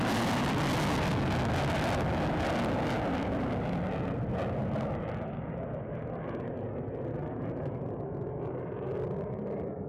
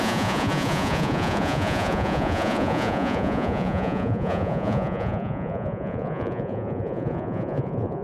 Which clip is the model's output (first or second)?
second